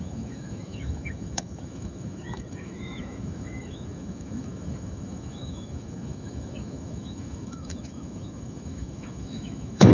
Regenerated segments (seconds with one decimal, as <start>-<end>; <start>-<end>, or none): 0.0-9.9